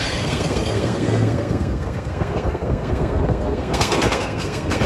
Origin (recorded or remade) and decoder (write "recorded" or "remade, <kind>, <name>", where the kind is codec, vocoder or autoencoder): remade, codec, SNAC